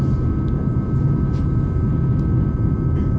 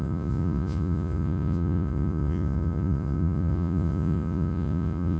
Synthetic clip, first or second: second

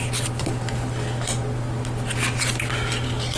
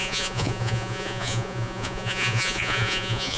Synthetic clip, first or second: second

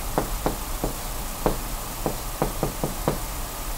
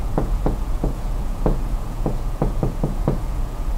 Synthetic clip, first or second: second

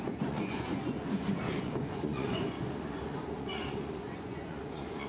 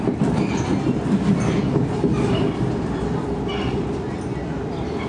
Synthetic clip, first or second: first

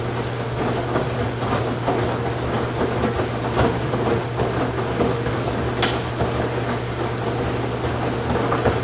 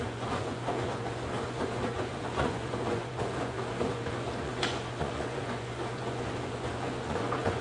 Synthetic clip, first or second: second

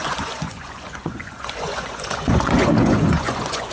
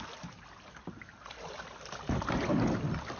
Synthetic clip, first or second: first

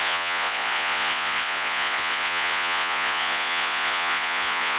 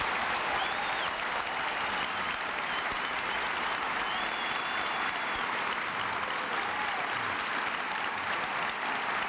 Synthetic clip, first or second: first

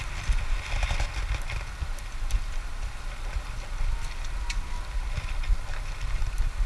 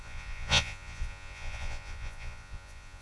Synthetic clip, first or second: second